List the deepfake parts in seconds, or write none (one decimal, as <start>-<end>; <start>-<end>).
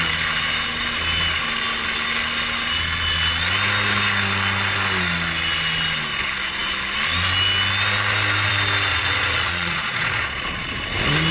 8.9-10.8